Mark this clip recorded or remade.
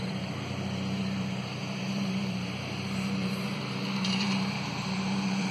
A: remade